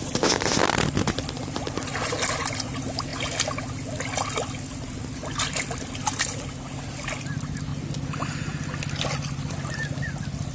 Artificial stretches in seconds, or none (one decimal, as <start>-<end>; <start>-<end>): none